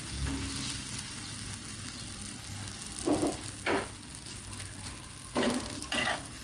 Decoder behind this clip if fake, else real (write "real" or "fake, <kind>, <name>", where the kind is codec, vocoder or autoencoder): real